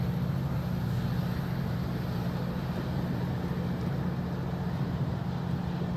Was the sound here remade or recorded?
recorded